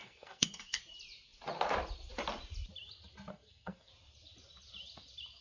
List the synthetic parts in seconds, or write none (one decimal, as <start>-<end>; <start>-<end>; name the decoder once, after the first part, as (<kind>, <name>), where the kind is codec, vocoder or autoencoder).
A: 0.0-0.8 (codec, SNAC); 3.3-3.9